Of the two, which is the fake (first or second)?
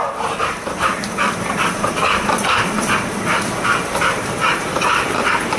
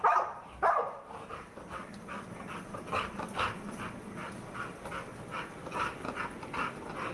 first